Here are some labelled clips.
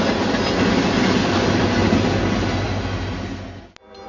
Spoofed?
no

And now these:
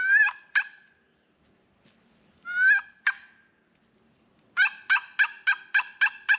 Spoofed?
no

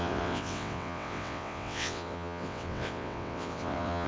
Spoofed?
yes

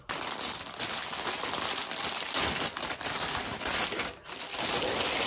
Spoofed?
no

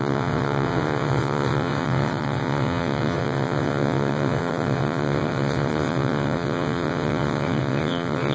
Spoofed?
yes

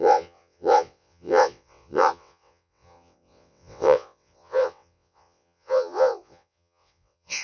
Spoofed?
yes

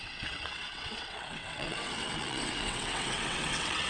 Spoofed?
yes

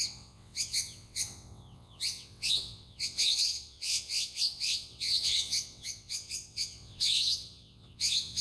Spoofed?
yes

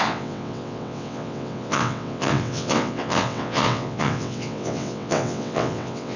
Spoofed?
yes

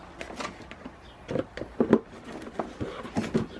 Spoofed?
no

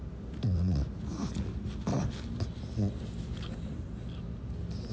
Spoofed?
no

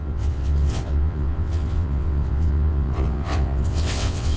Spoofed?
yes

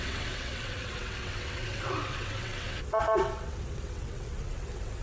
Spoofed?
yes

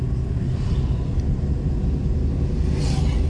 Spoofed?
no